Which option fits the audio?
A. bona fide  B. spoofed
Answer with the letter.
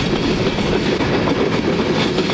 A